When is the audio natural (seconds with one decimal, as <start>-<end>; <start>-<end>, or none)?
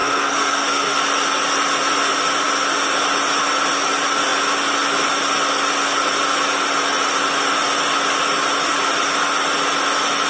1.0-10.3